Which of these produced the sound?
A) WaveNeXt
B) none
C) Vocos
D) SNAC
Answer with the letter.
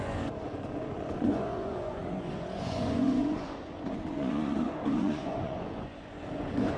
C